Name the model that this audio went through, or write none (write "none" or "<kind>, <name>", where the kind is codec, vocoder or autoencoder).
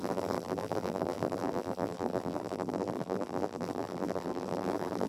vocoder, BigVGAN v2